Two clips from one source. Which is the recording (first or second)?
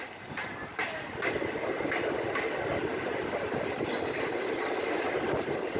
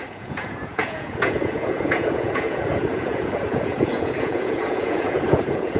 first